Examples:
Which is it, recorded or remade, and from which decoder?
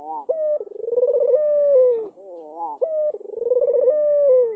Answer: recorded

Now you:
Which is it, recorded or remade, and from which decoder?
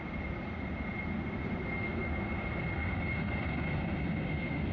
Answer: recorded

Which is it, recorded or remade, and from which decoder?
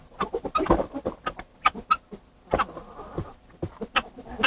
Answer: recorded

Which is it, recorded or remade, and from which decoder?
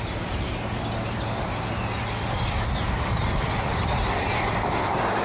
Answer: recorded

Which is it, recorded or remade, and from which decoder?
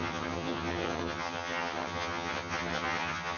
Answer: remade, vocoder, HiFi-GAN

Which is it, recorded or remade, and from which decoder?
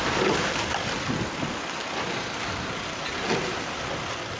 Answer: recorded